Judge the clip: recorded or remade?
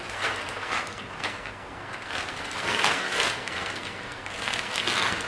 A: remade